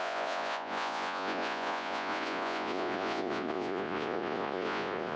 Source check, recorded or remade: remade